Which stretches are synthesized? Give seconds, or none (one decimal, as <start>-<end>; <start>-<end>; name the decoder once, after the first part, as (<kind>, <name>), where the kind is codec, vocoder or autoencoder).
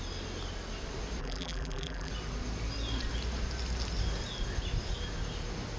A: 1.2-2.1 (vocoder, BigVGAN v2)